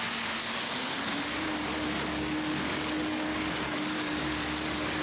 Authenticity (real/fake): fake